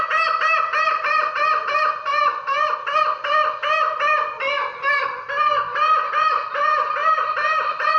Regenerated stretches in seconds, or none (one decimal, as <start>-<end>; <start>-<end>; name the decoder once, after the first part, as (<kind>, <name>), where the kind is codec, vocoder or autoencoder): none